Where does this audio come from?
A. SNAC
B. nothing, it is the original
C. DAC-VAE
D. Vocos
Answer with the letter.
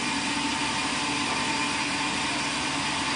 B